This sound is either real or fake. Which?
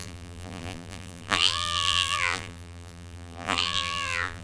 fake